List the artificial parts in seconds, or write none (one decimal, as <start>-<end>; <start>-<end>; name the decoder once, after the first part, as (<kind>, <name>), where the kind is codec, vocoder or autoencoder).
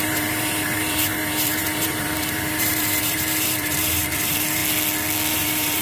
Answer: 0.0-4.6 (vocoder, BigVGAN v2); 5.3-5.8